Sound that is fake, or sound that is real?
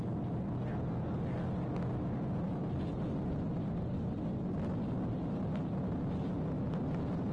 real